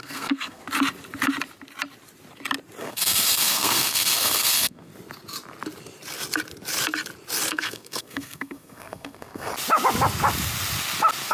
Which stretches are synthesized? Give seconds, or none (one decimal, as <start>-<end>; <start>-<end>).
0.0-0.6; 2.8-4.9; 7.5-9.5